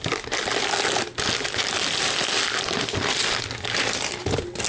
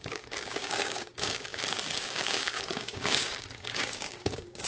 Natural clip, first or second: first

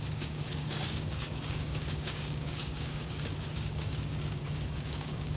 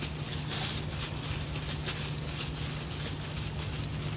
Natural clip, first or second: second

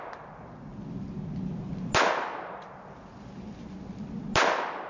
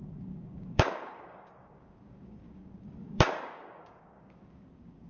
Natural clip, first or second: first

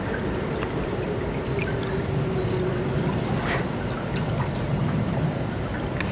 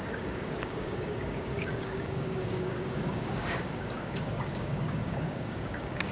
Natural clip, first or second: first